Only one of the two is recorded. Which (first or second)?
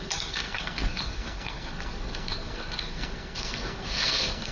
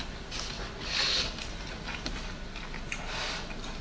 second